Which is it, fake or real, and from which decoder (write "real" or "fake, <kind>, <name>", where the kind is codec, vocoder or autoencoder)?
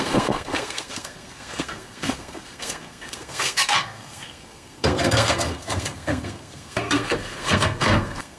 fake, codec, SNAC